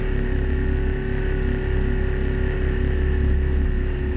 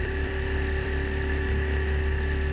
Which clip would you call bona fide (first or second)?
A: first